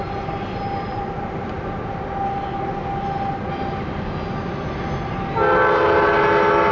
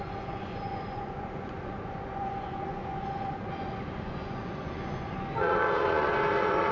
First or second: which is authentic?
first